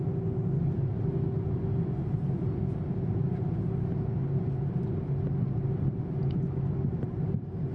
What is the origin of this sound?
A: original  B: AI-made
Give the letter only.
A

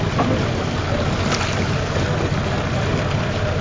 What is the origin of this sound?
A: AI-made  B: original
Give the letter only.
B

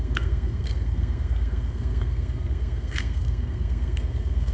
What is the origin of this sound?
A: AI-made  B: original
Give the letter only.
A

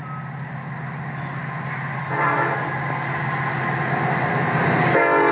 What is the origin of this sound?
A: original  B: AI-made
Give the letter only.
A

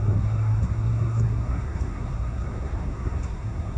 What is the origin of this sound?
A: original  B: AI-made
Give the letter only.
B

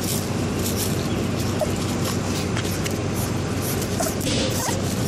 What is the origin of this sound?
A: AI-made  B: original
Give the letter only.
B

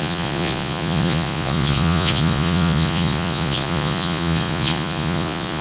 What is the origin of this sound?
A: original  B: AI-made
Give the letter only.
B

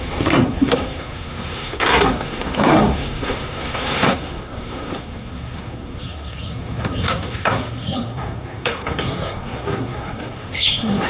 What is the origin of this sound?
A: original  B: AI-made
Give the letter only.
B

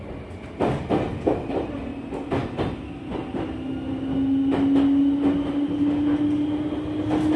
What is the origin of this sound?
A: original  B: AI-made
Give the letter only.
A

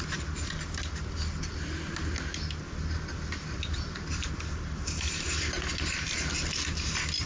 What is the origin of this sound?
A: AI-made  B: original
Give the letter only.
B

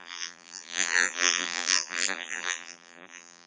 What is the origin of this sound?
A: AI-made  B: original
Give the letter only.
A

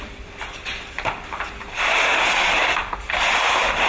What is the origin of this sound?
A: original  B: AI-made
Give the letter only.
B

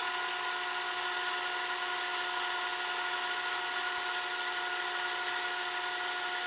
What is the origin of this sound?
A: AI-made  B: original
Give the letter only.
B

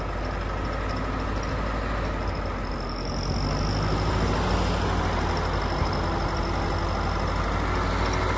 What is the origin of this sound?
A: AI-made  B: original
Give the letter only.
B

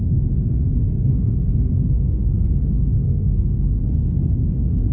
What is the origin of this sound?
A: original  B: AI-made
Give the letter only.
B